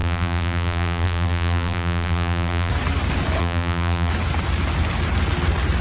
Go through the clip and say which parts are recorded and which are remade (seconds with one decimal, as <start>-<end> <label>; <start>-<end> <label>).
0.0-2.7 remade; 2.7-3.4 recorded; 3.4-4.1 remade; 4.1-5.8 recorded